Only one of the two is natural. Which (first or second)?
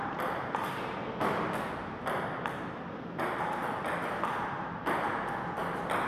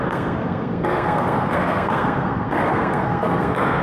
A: first